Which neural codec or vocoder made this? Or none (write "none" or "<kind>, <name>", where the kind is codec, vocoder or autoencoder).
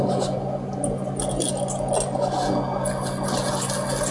none